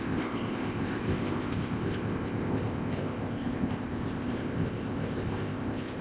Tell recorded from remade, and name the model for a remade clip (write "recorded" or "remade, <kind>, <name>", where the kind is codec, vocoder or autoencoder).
remade, codec, ZipCodec